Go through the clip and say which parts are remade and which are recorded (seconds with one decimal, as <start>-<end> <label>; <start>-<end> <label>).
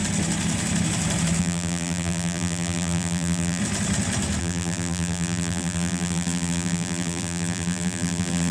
0.0-1.4 recorded; 1.4-3.6 remade; 3.6-4.4 recorded; 4.4-8.5 remade